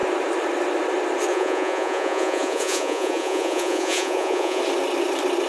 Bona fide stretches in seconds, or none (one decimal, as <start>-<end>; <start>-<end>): 0.0-1.3; 4.6-5.5